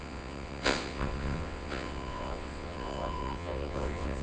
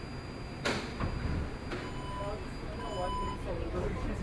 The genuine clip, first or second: second